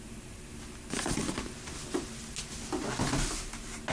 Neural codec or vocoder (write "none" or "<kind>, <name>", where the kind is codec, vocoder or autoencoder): none